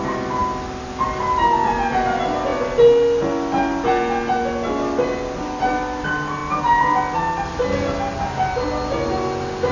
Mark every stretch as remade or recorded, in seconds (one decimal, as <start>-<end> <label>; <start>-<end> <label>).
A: 0.0-9.7 recorded